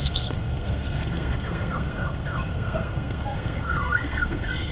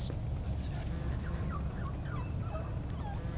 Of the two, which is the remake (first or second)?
first